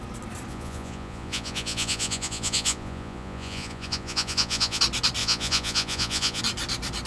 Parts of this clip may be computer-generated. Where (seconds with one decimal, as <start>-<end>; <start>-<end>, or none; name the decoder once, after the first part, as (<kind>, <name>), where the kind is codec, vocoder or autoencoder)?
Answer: 0.5-4.8 (vocoder, Vocos); 5.2-6.4